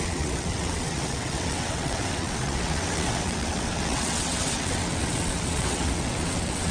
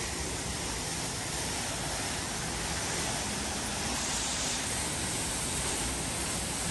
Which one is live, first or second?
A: second